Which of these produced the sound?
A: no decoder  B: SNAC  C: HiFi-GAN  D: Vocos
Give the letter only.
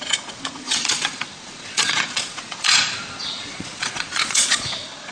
D